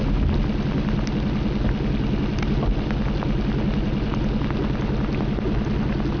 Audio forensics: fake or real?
real